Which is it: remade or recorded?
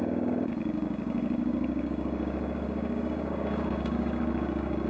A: remade